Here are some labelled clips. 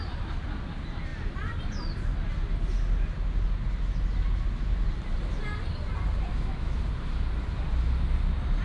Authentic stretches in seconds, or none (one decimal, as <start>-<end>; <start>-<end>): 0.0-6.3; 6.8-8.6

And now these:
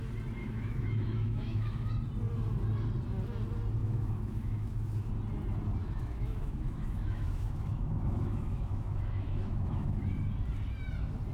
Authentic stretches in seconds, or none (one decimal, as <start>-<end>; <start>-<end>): 0.0-0.4; 1.9-3.8; 5.1-5.8; 10.0-11.3

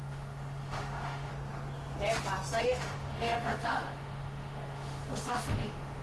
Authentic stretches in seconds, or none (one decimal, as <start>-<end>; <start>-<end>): 1.3-2.6